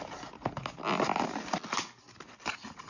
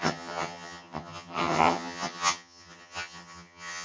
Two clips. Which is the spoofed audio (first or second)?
second